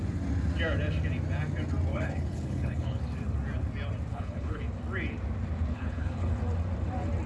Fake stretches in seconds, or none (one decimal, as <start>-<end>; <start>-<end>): 1.9-3.0; 4.1-4.6; 5.7-6.3